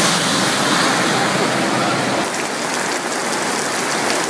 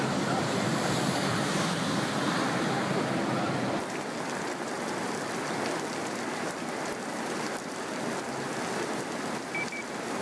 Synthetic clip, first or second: second